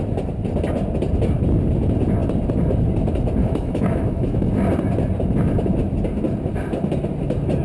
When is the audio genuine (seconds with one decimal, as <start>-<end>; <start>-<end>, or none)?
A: 0.0-3.4; 4.5-7.6